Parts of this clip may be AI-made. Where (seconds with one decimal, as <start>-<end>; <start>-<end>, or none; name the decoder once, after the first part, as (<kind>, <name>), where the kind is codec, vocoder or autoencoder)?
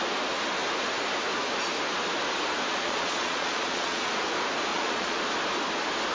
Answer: 2.7-4.0 (vocoder, Vocos); 4.7-5.2